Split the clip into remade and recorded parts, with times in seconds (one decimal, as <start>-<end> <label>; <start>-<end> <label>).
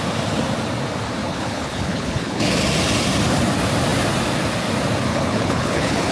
0.0-1.2 recorded; 1.2-2.5 remade; 2.5-5.1 recorded; 5.1-6.1 remade